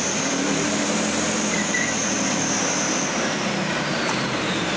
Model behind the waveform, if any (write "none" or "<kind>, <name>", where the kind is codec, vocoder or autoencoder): vocoder, BigVGAN v2